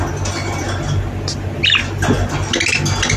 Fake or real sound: real